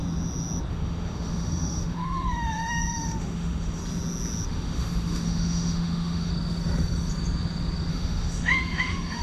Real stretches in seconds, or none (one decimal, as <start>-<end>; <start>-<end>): 0.0-0.7; 3.8-4.5; 6.3-7.9

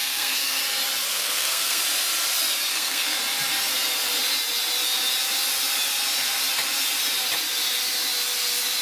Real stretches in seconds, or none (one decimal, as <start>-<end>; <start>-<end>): 0.6-1.1; 1.8-2.7; 3.2-8.8